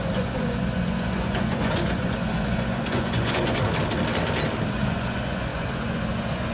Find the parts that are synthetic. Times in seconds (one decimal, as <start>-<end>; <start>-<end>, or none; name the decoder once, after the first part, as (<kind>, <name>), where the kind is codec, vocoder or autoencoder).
0.0-3.6 (vocoder, Vocos); 4.7-6.5